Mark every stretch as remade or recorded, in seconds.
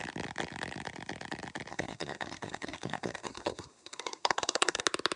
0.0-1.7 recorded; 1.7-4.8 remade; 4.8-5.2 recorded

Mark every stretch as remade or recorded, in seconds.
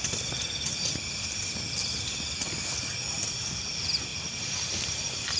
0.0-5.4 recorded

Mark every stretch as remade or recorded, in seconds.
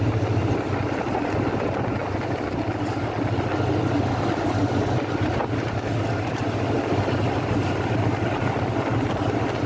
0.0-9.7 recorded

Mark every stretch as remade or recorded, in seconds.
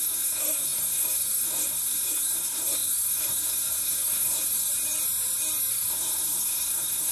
0.0-4.7 remade; 4.7-5.7 recorded; 5.7-7.1 remade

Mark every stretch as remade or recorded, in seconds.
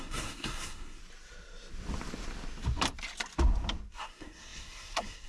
0.0-1.0 remade; 1.0-4.0 recorded; 4.0-5.3 remade